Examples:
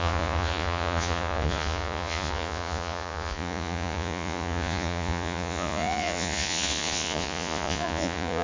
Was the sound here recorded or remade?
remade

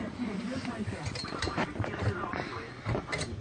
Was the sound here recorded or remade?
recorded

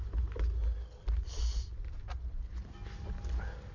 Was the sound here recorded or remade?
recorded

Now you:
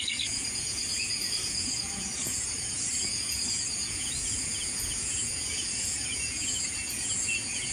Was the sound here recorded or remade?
remade